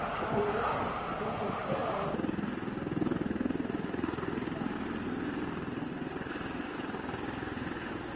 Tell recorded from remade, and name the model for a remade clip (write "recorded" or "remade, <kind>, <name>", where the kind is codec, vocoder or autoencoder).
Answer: recorded